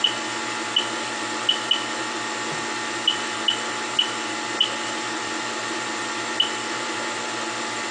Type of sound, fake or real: fake